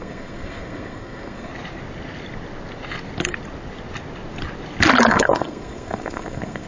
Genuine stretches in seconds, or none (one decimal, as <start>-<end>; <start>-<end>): 1.5-5.1